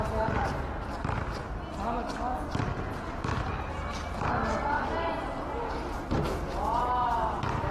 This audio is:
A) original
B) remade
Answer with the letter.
A